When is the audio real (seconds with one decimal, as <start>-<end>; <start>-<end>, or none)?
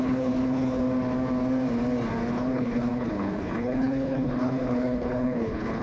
0.8-2.3